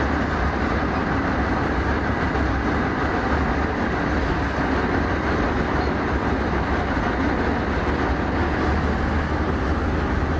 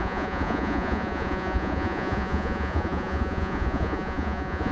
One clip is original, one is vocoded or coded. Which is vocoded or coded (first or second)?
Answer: second